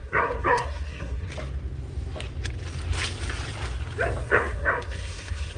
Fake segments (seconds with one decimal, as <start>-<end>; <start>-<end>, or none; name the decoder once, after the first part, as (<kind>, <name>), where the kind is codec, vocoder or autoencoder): 0.0-1.3 (codec, SNAC); 4.2-5.6

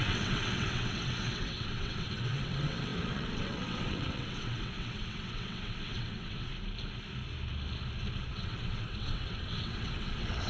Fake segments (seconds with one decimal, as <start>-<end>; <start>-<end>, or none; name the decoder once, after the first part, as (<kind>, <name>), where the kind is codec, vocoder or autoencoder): 0.0-6.5 (vocoder, WaveNeXt); 8.3-10.5